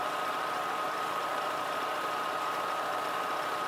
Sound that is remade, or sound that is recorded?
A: recorded